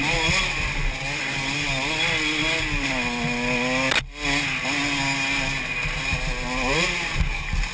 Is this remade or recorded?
recorded